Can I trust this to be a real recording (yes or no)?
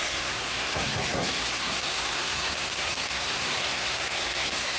no